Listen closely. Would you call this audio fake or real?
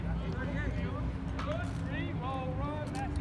real